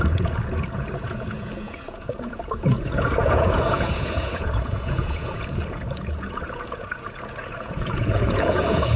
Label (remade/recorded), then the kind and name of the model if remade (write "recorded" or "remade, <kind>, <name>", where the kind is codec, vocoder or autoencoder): remade, vocoder, Vocos